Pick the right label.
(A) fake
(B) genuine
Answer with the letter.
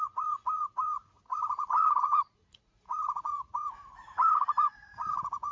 A